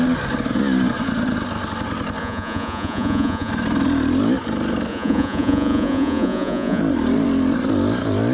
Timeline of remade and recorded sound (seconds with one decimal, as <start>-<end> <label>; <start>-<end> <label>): 0.0-2.2 recorded; 2.2-3.5 remade; 3.5-4.9 recorded; 4.9-6.8 remade; 6.8-8.3 recorded